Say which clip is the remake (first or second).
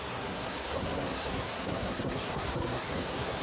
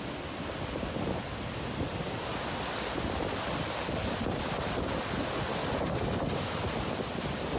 first